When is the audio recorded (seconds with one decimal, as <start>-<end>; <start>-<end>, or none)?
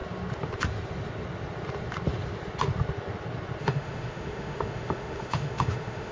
0.0-3.6